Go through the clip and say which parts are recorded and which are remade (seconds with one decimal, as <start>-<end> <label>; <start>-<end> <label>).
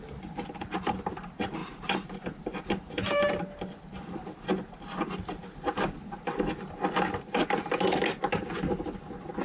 0.0-1.6 recorded; 1.6-3.4 remade; 3.4-9.4 recorded